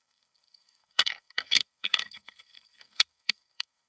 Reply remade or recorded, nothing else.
remade